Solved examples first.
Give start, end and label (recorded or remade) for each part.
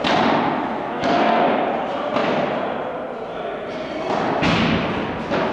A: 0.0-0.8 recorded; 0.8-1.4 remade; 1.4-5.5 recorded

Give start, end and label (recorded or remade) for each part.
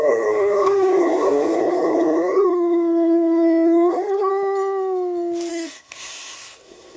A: 0.0-4.3 remade; 4.3-5.5 recorded; 5.5-7.0 remade